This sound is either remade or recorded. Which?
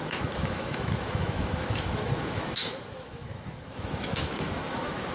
remade